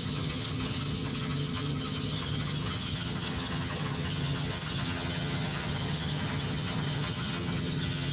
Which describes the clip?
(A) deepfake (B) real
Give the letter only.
A